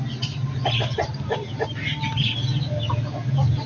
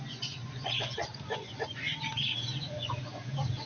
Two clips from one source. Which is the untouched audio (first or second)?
first